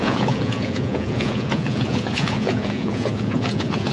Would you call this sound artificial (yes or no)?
yes